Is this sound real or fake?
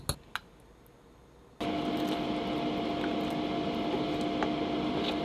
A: real